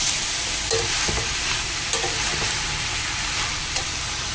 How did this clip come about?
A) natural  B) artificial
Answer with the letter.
B